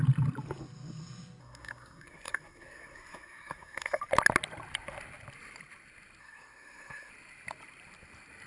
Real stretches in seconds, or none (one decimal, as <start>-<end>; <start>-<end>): 0.0-1.4; 4.0-6.2; 7.1-8.5